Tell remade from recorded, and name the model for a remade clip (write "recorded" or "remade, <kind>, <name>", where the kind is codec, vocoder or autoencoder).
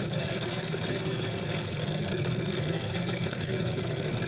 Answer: remade, codec, SNAC